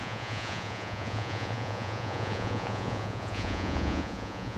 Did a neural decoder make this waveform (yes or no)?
yes